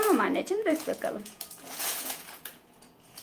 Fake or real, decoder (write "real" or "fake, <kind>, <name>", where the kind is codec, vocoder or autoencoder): fake, vocoder, Vocos